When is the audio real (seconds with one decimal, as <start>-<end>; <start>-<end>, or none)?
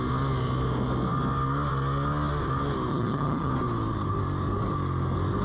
0.0-2.9; 3.5-5.4